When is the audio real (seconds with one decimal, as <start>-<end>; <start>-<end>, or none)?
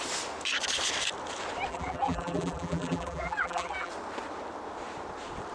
0.0-1.7; 3.9-5.5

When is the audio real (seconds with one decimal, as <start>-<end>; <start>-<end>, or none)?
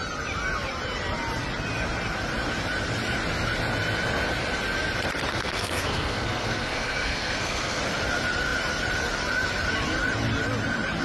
0.0-5.3; 7.8-11.0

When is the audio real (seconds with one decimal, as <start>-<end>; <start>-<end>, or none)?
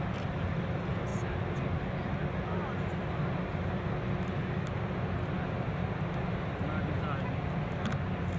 0.0-8.4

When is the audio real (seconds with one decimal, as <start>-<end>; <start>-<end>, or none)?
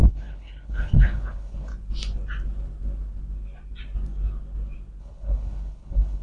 1.7-5.0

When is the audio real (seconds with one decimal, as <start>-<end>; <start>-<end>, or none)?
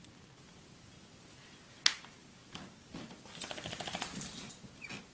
0.0-5.1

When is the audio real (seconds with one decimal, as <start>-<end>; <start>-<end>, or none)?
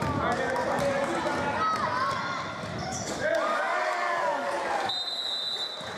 0.0-2.8; 4.6-6.0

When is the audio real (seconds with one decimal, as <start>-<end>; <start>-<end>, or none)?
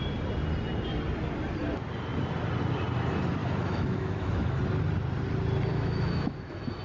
0.0-3.4; 4.6-5.7